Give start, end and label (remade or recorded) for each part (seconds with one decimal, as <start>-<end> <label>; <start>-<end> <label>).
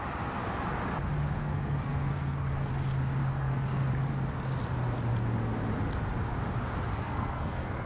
0.0-1.4 recorded; 1.4-2.7 remade; 2.7-3.2 recorded; 3.2-3.9 remade; 3.9-6.9 recorded; 6.9-7.9 remade